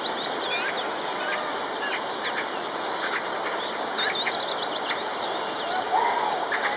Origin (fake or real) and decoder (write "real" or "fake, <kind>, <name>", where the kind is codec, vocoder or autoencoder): real